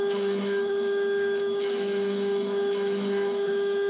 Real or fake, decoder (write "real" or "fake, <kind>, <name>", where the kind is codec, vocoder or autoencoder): fake, autoencoder, DAC-VAE